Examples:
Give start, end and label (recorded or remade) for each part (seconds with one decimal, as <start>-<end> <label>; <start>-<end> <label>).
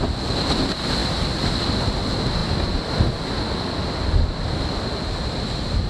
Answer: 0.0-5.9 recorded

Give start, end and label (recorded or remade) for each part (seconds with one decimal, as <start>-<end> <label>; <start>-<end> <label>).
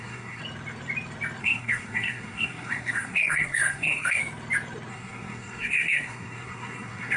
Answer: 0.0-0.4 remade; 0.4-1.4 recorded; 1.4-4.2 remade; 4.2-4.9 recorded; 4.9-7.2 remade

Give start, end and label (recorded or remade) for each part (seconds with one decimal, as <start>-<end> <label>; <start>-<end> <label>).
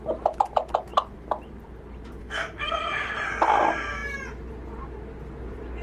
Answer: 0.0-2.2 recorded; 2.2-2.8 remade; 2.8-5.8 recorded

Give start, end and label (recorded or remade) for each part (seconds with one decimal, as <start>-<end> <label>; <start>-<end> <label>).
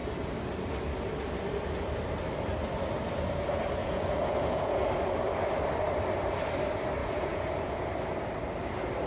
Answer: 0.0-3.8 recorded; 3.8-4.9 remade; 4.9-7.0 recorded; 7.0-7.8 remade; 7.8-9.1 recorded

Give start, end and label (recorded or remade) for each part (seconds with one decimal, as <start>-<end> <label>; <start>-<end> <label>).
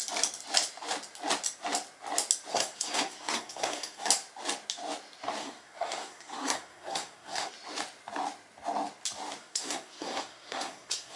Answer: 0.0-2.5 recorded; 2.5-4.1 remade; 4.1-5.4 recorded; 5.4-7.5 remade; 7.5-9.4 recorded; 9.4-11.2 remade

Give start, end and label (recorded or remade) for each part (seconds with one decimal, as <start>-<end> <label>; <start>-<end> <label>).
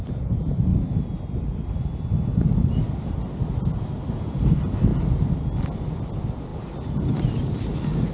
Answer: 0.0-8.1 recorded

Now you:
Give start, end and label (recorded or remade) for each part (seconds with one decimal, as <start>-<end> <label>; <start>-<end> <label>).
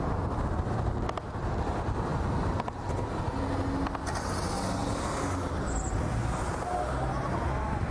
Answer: 0.0-2.1 recorded; 2.1-3.2 remade; 3.2-7.9 recorded